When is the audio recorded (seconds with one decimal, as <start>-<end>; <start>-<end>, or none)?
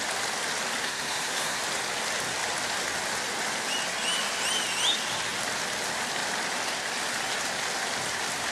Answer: 0.0-0.8; 1.6-8.5